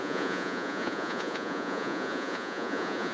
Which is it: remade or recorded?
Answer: remade